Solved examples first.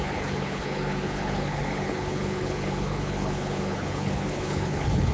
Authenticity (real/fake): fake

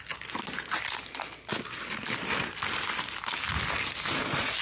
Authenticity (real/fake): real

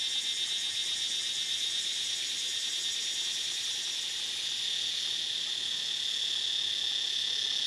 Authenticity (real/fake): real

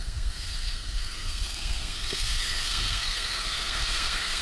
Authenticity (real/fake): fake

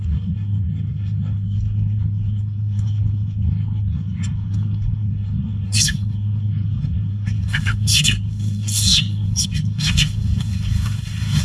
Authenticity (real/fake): fake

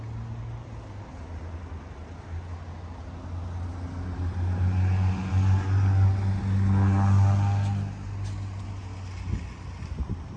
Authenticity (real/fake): real